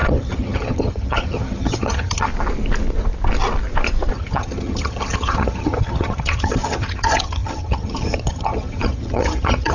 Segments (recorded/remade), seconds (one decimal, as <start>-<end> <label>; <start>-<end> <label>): 0.0-2.3 remade; 2.3-4.1 recorded; 4.1-9.7 remade